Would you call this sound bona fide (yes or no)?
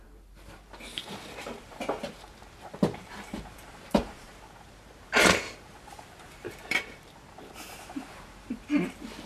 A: no